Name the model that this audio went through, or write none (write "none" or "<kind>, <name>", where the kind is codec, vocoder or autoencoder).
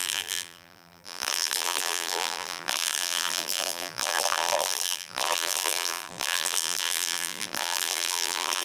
vocoder, BigVGAN v2